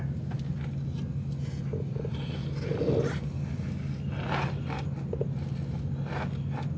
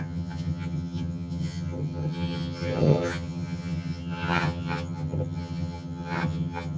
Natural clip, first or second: first